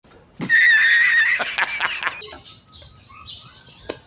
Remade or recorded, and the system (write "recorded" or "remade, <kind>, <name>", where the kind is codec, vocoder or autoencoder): recorded